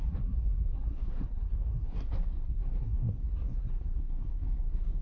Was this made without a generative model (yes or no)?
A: no